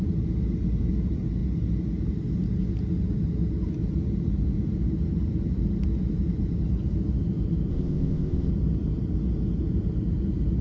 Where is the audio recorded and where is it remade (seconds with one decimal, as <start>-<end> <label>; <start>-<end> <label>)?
0.0-7.7 recorded; 7.7-8.5 remade; 8.5-10.6 recorded